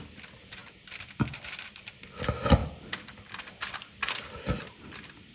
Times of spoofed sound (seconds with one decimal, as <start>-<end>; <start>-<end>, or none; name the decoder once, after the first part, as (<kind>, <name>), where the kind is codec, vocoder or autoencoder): 0.0-2.6 (vocoder, BigVGAN v2); 3.4-4.0; 4.7-5.3